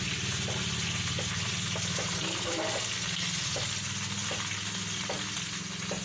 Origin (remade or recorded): recorded